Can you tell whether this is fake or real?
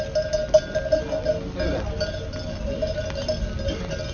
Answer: real